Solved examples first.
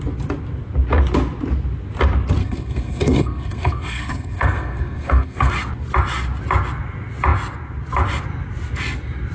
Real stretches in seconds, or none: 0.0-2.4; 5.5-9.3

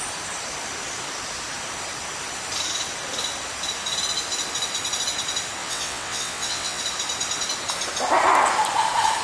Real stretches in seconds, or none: 0.0-5.6; 6.8-9.2

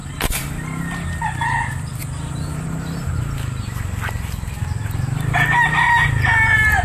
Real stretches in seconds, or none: 0.0-2.0; 3.1-6.8

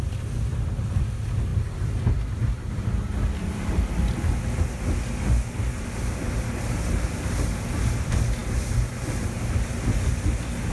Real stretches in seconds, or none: 0.0-8.4; 8.9-10.7

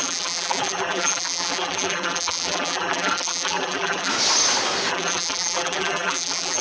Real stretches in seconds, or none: 4.1-4.9

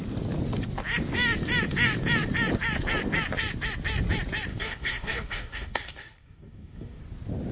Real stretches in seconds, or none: 0.0-4.5; 7.0-7.5

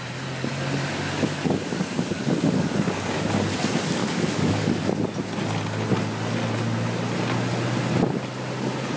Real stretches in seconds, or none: 0.0-0.8; 3.3-4.0; 4.8-9.0

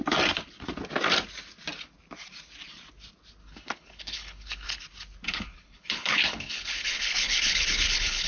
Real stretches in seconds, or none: 0.0-3.4; 4.8-5.3